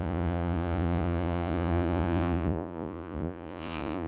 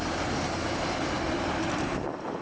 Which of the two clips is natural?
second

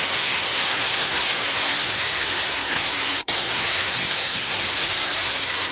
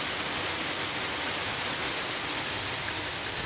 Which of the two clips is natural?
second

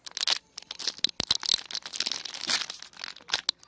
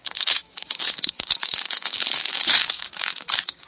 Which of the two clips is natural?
first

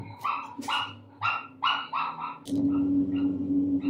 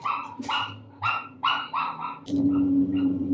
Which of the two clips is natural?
first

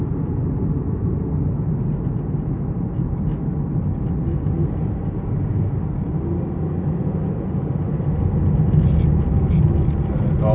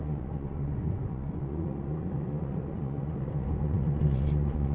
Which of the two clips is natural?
first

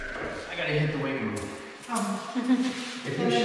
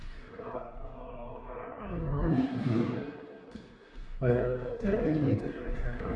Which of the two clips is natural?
first